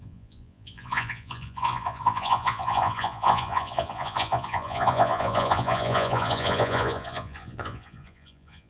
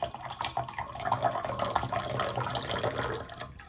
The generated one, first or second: first